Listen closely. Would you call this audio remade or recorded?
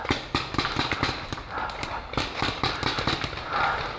recorded